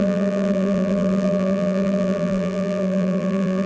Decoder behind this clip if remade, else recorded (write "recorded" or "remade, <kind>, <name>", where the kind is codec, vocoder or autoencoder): remade, vocoder, BigVGAN v2